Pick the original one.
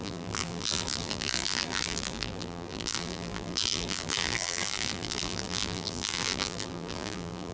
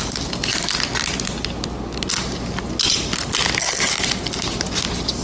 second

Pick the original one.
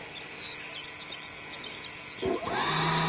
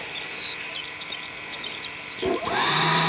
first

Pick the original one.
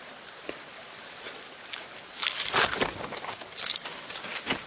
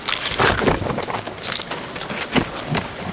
second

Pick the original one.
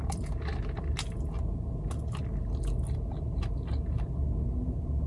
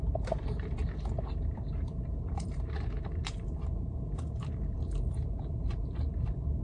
first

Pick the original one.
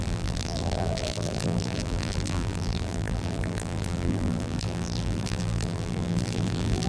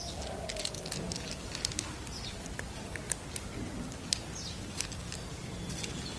second